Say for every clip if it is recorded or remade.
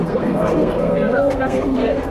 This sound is remade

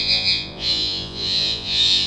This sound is remade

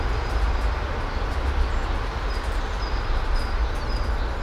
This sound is recorded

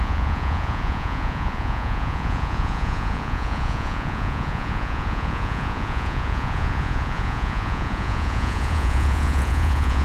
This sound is remade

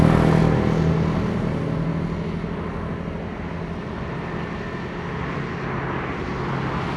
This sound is recorded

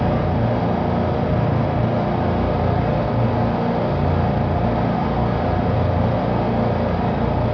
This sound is recorded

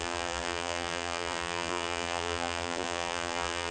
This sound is remade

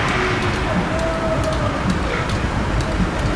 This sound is recorded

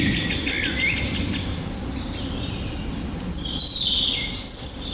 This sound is remade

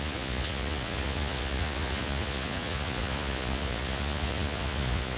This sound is remade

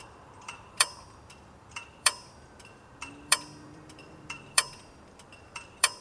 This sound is remade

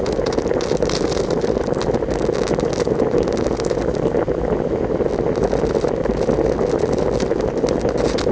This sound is recorded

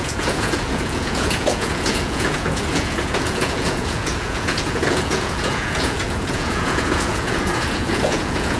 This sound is remade